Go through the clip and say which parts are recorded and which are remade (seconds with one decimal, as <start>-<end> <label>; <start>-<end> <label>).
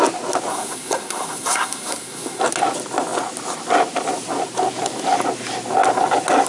0.0-0.5 recorded; 0.5-2.4 remade; 2.4-6.5 recorded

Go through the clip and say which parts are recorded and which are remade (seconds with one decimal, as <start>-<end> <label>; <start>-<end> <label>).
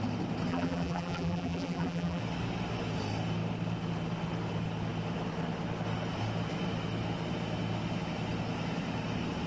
0.0-0.5 recorded; 0.5-2.2 remade; 2.2-9.5 recorded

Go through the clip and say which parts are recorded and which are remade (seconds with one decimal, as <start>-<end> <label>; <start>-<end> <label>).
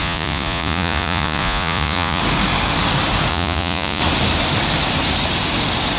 0.0-2.2 remade; 2.2-3.3 recorded; 3.3-4.0 remade; 4.0-6.0 recorded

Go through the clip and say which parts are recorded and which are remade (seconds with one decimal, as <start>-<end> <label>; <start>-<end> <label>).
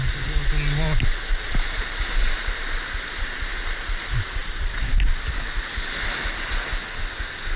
0.0-7.6 recorded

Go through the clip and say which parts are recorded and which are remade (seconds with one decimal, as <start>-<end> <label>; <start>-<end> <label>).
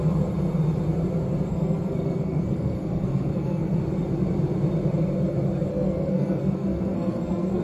0.0-1.5 recorded; 1.5-3.8 remade; 3.8-5.7 recorded; 5.7-7.6 remade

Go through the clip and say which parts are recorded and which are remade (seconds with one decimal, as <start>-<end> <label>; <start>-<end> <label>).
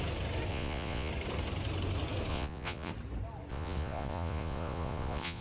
0.0-0.5 recorded; 0.5-1.1 remade; 1.1-2.3 recorded; 2.3-2.9 remade; 2.9-3.5 recorded; 3.5-5.4 remade